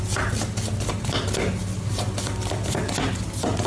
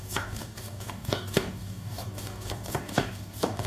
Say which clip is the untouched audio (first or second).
first